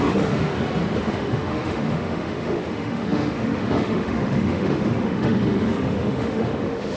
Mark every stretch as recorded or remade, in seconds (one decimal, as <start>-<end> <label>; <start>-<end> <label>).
0.0-0.5 remade; 0.5-1.0 recorded; 1.0-7.0 remade